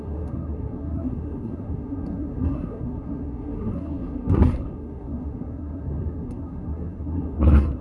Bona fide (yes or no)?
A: no